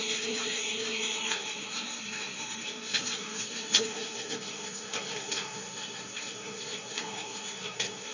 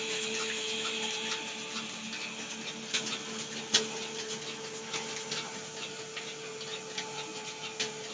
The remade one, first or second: first